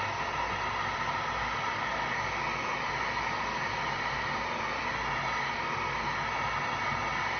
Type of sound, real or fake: real